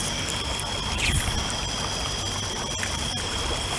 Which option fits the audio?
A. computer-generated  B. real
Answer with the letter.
A